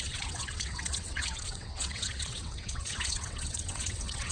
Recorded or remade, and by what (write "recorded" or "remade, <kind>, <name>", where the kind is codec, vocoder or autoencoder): remade, vocoder, WaveNeXt